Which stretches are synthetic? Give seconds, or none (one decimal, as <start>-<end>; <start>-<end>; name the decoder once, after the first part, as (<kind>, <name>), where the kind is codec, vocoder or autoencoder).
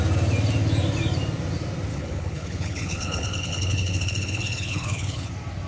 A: 1.9-5.3 (codec, HILCodec)